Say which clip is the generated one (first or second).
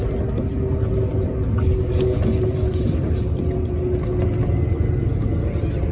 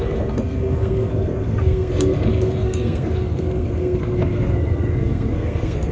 second